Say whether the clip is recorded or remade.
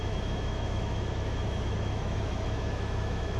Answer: remade